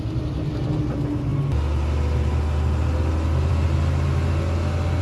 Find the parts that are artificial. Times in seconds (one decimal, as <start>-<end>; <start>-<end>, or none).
none